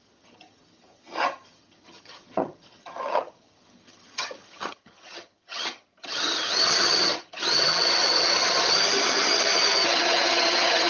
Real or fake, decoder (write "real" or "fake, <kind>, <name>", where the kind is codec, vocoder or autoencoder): fake, vocoder, HiFi-GAN